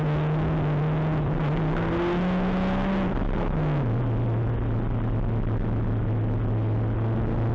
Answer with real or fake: real